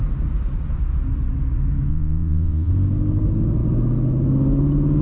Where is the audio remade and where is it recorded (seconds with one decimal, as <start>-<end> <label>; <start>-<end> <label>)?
0.0-1.9 recorded; 1.9-2.7 remade; 2.7-5.0 recorded